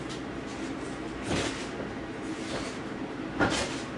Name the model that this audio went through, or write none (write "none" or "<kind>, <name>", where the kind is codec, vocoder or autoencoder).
vocoder, BigVGAN v2